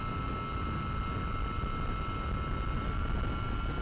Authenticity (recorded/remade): recorded